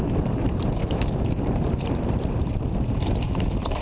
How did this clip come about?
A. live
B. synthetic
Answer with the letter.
B